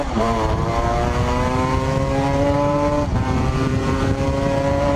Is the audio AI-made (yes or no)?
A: yes